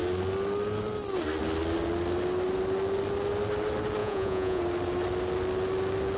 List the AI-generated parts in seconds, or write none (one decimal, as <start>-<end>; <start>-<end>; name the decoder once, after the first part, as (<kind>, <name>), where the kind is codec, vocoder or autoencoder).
4.0-4.6 (vocoder, Vocos)